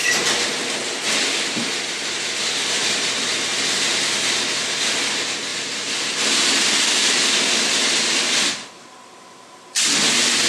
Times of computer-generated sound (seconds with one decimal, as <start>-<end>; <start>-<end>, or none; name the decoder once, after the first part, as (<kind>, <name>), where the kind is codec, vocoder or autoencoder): 5.5-8.2 (vocoder, BigVGAN v2)